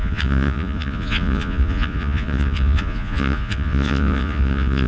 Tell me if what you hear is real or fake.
fake